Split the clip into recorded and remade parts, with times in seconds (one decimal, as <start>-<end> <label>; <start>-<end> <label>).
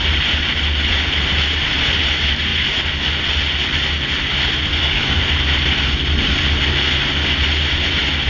0.0-4.7 recorded; 4.7-5.2 remade; 5.2-8.3 recorded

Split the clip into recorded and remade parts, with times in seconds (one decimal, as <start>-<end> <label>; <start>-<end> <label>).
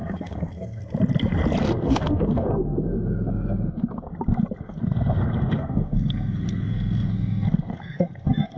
0.0-0.8 remade; 0.8-1.6 recorded; 1.6-4.1 remade; 4.1-4.6 recorded; 4.6-8.6 remade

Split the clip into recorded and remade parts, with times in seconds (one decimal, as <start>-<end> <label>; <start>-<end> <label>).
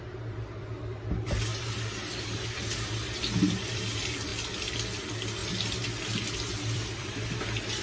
0.0-1.5 remade; 1.5-3.5 recorded; 3.5-4.3 remade; 4.3-5.0 recorded; 5.0-5.4 remade; 5.4-5.9 recorded; 5.9-7.8 remade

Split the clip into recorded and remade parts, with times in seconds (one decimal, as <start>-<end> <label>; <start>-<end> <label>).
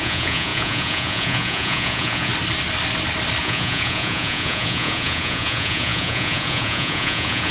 0.0-2.3 remade; 2.3-3.4 recorded; 3.4-7.5 remade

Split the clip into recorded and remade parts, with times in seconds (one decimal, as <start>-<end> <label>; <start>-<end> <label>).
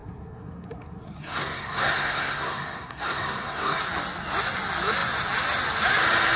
0.0-3.8 remade; 3.8-6.4 recorded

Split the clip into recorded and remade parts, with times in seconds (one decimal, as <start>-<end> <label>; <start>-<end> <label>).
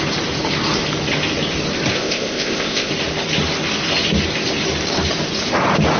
0.0-1.9 recorded; 1.9-2.9 remade; 2.9-6.0 recorded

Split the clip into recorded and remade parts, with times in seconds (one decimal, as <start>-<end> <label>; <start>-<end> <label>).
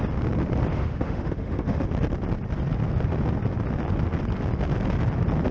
0.0-0.7 recorded; 0.7-1.9 remade; 1.9-5.5 recorded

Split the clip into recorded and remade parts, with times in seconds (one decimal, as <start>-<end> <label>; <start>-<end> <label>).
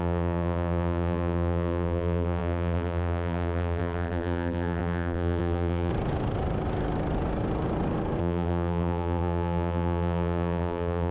0.0-5.9 remade; 5.9-8.2 recorded; 8.2-11.1 remade